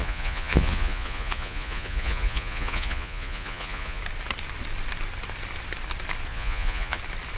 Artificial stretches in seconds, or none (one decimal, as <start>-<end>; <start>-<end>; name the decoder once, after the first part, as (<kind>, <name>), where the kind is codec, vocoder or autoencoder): 0.0-4.0 (vocoder, Vocos); 6.3-7.0